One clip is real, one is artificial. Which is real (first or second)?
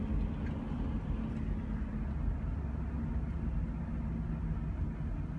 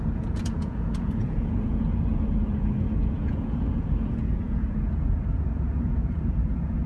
first